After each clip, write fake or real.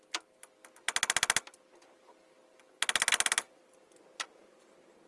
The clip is real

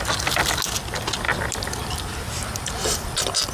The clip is real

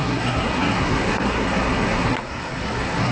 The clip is fake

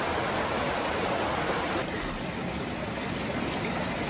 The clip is real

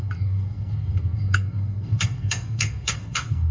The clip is fake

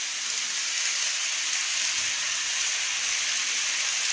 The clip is real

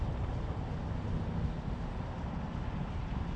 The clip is real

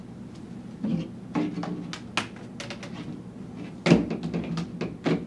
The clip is real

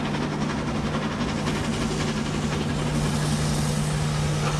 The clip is real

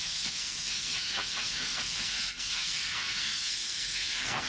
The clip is fake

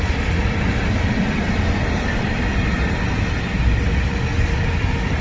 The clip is real